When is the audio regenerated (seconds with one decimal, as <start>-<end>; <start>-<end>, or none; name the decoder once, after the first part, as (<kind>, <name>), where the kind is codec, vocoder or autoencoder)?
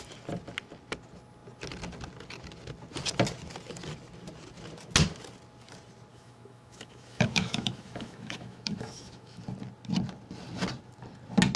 6.1-9.4 (autoencoder, DAC-VAE)